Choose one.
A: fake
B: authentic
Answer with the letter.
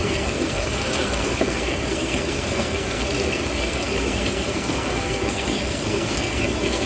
A